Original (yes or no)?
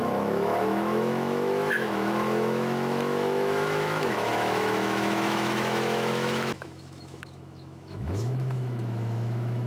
no